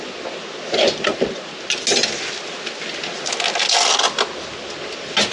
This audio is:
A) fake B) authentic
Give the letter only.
B